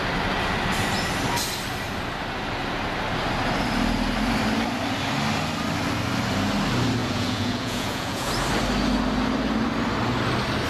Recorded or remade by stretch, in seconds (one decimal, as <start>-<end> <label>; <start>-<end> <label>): 0.0-7.0 recorded; 7.0-8.3 remade; 8.3-10.7 recorded